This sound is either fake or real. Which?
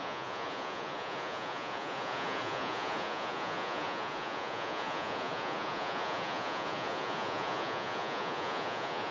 fake